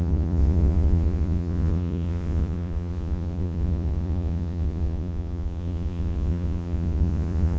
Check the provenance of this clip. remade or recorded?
remade